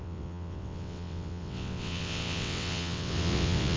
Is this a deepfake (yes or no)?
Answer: yes